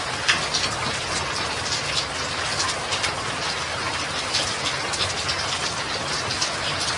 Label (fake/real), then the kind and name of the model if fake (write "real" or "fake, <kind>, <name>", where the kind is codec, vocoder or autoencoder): real